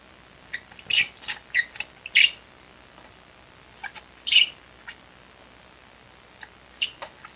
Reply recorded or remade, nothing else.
recorded